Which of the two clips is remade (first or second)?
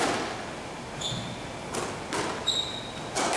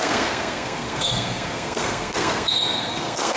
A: second